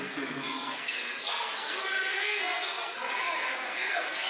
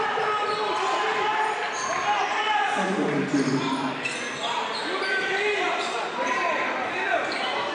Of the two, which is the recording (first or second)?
second